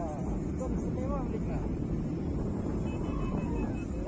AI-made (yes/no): no